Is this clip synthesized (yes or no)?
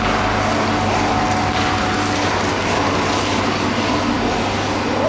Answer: no